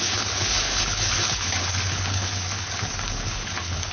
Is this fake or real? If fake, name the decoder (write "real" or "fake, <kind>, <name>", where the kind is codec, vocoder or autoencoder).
fake, codec, HILCodec